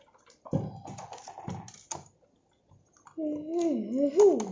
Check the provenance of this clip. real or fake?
real